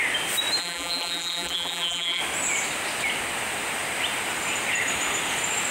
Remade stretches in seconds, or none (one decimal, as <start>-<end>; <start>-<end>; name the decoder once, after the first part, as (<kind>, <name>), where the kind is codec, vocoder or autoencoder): 0.6-2.2 (vocoder, BigVGAN v2)